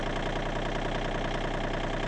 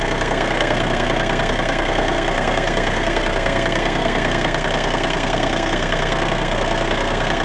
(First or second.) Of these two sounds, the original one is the first